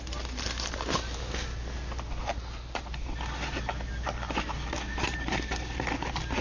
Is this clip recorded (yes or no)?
no